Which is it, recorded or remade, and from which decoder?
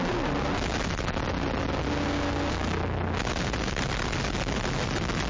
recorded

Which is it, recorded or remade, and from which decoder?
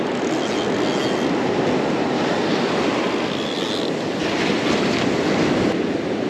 recorded